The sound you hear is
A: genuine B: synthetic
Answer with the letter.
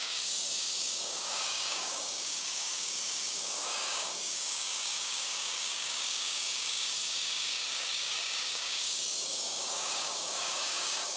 B